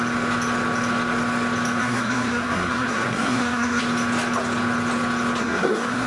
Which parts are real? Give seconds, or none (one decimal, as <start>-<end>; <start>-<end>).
0.0-1.8; 3.8-5.4